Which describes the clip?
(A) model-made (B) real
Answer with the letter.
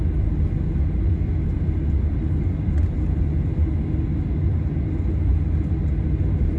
B